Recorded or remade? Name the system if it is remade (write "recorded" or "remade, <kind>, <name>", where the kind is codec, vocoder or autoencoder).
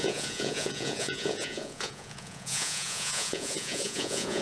remade, vocoder, Vocos